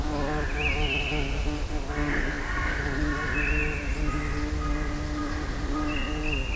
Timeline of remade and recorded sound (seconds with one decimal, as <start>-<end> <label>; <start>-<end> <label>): 0.0-2.0 recorded; 2.0-2.8 remade; 2.8-6.6 recorded